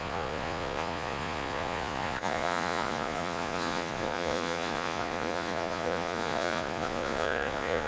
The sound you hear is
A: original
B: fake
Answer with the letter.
B